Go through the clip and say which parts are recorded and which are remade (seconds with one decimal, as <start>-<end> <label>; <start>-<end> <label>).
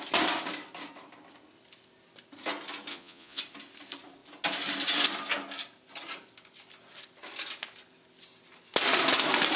0.0-2.9 recorded; 2.9-3.4 remade; 3.4-9.6 recorded